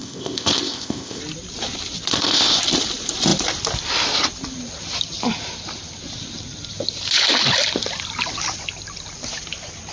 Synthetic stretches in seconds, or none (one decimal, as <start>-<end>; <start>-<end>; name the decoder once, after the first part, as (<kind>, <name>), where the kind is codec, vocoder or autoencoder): 0.0-1.2 (codec, ZipCodec); 2.1-2.6